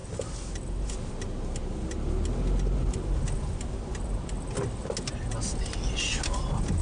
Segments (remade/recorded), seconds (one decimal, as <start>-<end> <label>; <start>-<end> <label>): 0.0-6.8 recorded